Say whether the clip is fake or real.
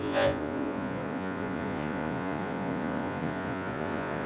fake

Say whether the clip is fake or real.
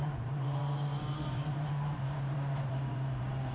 fake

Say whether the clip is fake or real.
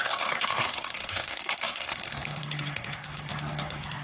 fake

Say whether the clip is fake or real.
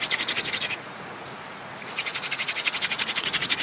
fake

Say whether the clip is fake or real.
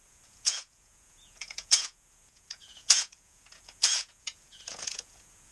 fake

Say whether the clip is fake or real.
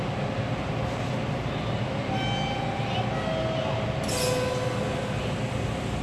real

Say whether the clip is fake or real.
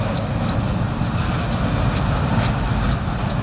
real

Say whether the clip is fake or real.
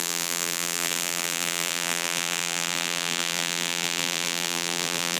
fake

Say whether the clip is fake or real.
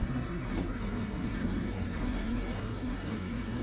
fake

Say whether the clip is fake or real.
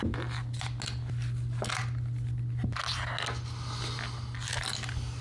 real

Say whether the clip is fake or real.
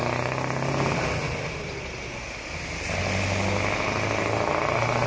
real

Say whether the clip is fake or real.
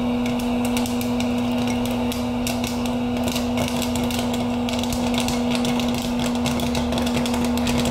real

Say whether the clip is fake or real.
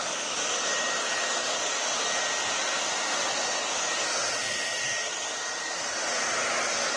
real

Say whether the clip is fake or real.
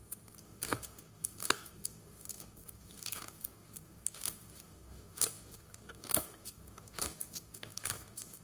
fake